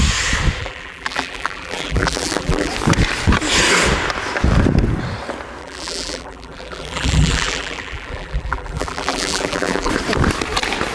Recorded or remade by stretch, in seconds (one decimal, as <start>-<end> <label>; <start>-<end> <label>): 0.0-0.6 recorded; 0.6-2.7 remade; 2.7-5.6 recorded; 5.6-9.9 remade; 9.9-10.9 recorded